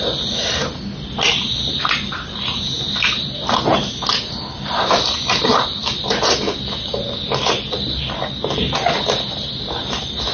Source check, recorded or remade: recorded